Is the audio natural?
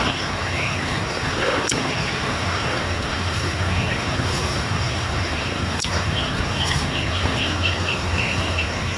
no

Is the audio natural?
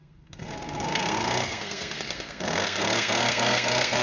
no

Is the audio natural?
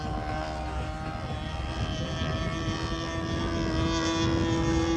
yes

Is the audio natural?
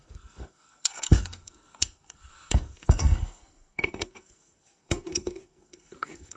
no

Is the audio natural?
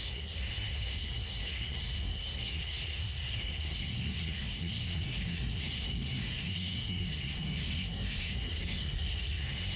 no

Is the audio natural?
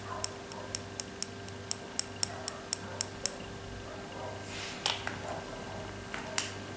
yes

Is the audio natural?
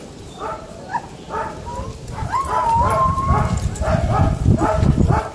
yes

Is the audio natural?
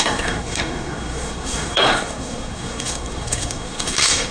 no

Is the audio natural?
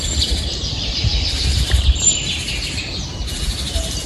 yes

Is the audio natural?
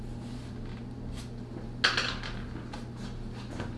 yes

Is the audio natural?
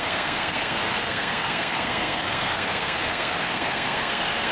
no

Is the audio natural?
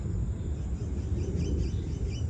yes